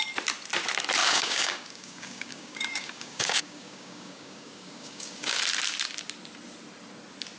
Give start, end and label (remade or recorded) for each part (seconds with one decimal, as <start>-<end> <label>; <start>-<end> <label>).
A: 0.0-1.0 recorded; 1.0-5.4 remade; 5.4-7.4 recorded